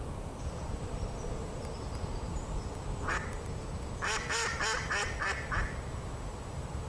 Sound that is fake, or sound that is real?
real